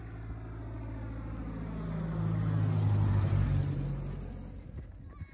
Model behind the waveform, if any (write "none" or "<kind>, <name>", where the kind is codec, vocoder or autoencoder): none